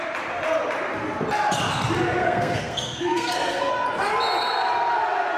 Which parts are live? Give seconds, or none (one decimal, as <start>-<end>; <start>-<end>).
0.0-2.2; 3.7-5.4